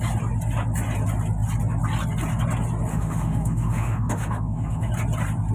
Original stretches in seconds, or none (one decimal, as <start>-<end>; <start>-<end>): 0.0-2.9; 4.9-5.5